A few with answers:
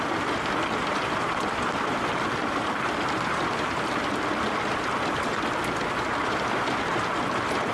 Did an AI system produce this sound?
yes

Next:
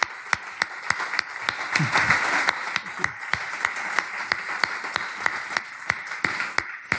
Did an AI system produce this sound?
no